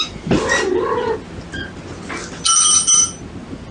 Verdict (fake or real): real